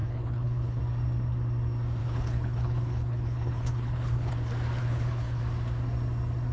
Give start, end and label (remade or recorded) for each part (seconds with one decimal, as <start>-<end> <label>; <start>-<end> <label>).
0.0-0.8 remade; 0.8-2.0 recorded; 2.0-4.3 remade; 4.3-4.8 recorded; 4.8-5.4 remade; 5.4-6.5 recorded